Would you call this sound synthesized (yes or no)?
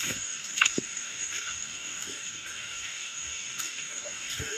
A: yes